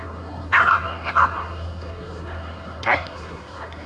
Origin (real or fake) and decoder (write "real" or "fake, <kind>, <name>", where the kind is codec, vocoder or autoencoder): fake, codec, SNAC